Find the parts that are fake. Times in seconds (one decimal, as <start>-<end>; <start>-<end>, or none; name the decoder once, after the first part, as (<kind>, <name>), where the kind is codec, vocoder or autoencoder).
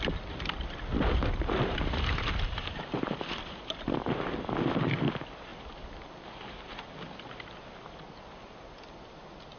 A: none